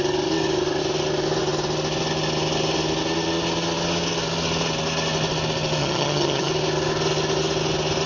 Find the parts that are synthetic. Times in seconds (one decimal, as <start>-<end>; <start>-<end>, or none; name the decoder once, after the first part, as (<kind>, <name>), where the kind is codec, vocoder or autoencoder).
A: 5.8-6.5 (vocoder, HiFi-GAN)